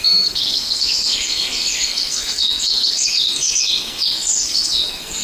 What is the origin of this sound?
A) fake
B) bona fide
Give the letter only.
A